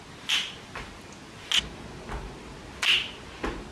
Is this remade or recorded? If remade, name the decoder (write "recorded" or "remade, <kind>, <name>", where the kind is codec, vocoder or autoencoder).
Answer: recorded